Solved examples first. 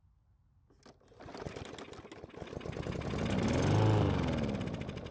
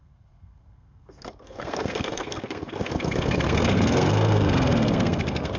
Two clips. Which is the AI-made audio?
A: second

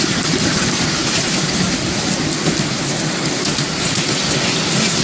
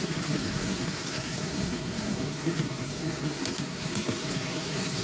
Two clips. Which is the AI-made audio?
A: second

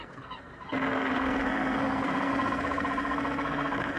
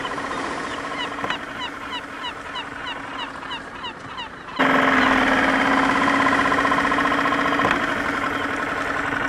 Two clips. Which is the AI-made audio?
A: first